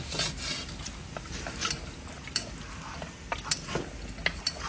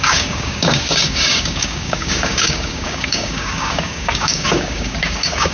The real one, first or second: first